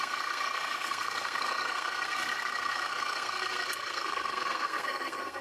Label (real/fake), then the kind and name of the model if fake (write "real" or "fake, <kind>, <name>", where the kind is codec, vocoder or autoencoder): fake, codec, SNAC